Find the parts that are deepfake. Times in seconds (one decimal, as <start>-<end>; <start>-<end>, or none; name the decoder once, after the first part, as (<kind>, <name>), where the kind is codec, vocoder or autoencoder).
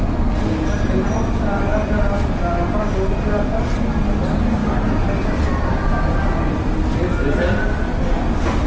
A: none